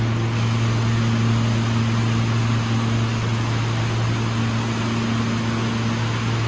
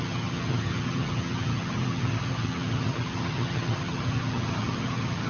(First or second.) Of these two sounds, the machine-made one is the second